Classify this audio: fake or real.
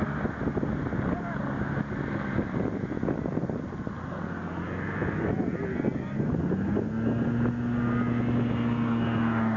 real